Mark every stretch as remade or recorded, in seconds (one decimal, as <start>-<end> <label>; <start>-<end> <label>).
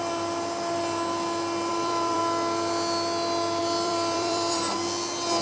0.0-1.7 recorded; 1.7-2.2 remade; 2.2-3.6 recorded; 3.6-4.7 remade; 4.7-5.4 recorded